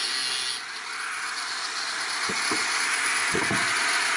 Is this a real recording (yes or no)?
yes